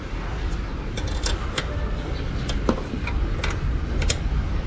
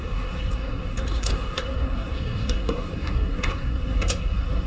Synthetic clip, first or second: second